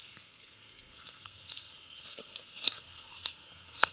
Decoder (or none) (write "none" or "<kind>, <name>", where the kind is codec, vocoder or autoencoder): codec, SNAC